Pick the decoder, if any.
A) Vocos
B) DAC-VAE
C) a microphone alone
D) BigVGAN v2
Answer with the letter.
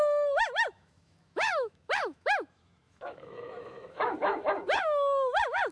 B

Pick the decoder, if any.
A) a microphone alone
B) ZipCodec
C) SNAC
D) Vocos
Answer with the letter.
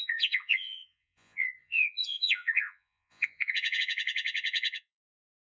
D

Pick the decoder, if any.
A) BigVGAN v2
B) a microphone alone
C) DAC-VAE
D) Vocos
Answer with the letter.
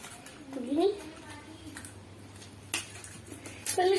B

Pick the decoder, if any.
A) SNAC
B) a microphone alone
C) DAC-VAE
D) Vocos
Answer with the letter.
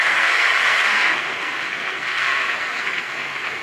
A